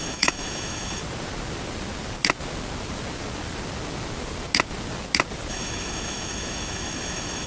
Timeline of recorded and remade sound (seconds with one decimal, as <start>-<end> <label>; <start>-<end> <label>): 0.0-1.0 remade; 1.0-5.5 recorded; 5.5-7.5 remade